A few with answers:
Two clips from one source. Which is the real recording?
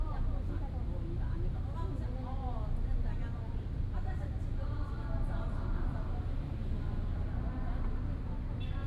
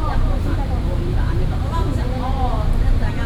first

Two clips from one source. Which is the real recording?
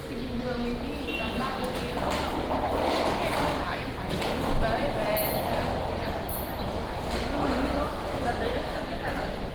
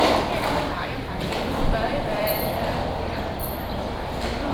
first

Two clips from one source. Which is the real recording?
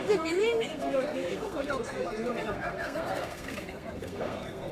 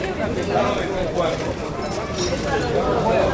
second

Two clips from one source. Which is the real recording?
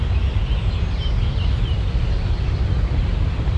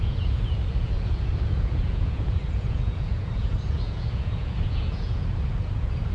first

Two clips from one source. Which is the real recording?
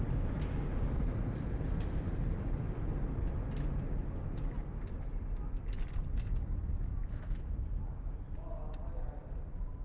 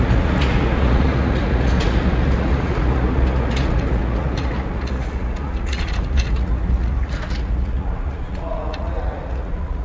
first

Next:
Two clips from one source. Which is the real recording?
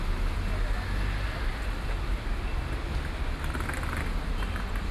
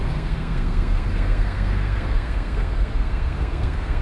first